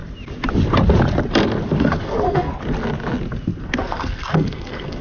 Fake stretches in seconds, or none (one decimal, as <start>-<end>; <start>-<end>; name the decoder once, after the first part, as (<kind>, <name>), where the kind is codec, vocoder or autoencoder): 1.8-2.5 (codec, SNAC); 3.6-5.0